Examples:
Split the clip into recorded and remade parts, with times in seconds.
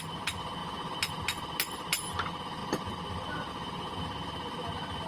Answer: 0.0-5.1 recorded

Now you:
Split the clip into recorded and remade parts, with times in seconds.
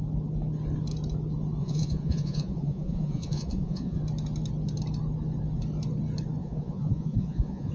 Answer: 0.0-1.6 recorded; 1.6-4.0 remade; 4.0-6.4 recorded; 6.4-7.7 remade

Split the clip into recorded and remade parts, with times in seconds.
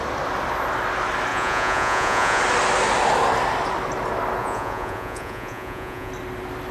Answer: 0.0-1.3 recorded; 1.3-2.4 remade; 2.4-4.4 recorded; 4.4-6.1 remade; 6.1-6.7 recorded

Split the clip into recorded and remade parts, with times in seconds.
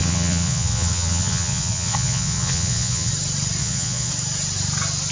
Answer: 0.0-3.1 remade; 3.1-3.6 recorded; 3.6-4.1 remade; 4.1-5.1 recorded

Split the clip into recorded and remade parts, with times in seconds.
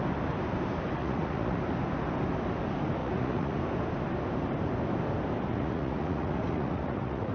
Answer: 0.0-1.0 recorded; 1.0-1.6 remade; 1.6-3.0 recorded; 3.0-3.6 remade; 3.6-5.5 recorded; 5.5-7.3 remade